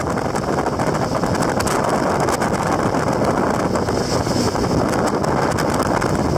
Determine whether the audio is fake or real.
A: real